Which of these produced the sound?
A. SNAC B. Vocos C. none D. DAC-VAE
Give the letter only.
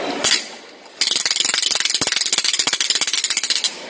C